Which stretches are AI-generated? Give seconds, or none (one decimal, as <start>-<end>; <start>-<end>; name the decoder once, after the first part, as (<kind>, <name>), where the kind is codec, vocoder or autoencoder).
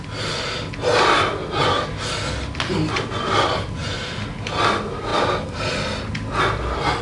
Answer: none